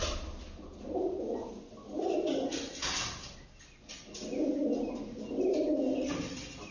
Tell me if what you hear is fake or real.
real